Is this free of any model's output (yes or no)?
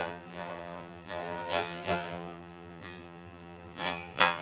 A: no